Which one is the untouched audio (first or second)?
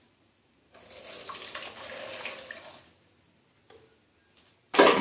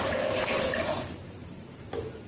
first